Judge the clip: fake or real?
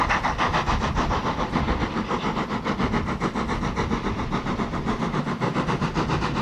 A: real